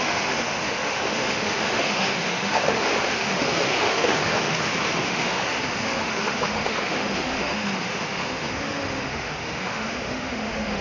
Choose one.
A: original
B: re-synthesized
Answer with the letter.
B